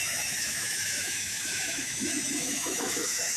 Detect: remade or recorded remade